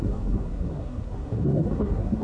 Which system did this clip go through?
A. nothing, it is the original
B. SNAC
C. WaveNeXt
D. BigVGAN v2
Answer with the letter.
B